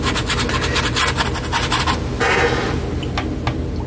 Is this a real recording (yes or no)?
yes